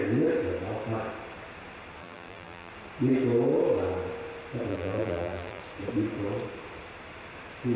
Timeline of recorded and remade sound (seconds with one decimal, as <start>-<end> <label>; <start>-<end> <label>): 0.0-2.0 recorded; 2.0-2.7 remade; 2.7-4.7 recorded; 4.7-5.6 remade; 5.6-7.8 recorded